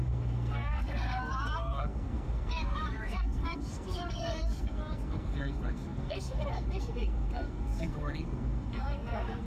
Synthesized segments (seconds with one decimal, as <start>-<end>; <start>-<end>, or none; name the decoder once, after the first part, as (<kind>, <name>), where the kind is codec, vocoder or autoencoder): 0.0-9.5 (codec, SNAC)